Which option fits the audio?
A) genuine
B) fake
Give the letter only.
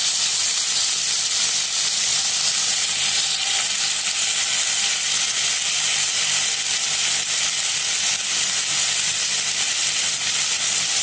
A